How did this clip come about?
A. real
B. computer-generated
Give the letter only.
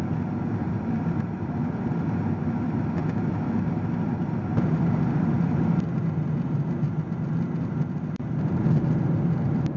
A